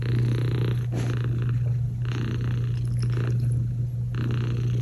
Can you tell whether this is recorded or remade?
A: recorded